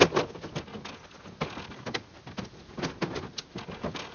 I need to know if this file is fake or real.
real